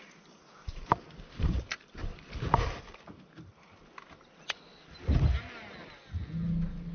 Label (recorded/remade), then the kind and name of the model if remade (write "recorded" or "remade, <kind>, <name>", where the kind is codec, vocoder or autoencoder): recorded